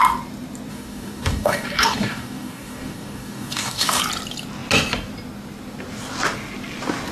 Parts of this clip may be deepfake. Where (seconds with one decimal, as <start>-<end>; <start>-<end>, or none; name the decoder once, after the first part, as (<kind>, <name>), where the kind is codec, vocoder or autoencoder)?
0.7-4.0 (codec, DAC)